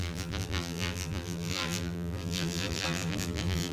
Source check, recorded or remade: remade